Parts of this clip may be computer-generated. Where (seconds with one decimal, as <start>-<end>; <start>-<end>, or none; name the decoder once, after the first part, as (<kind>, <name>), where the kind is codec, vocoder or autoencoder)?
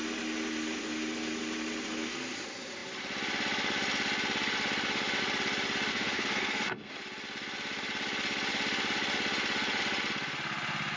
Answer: 5.9-6.9 (codec, SNAC)